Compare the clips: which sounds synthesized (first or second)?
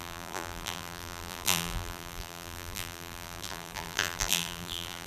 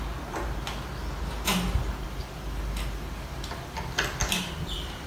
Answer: first